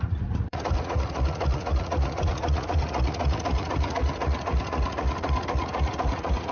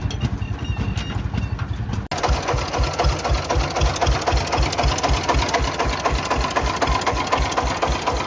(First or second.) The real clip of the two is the second